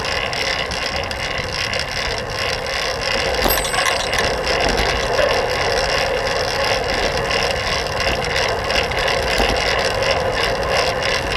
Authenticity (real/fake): real